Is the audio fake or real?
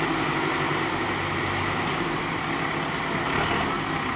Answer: real